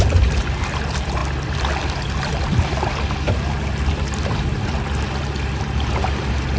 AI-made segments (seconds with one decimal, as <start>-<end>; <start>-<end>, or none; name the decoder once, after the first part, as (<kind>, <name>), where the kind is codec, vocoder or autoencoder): none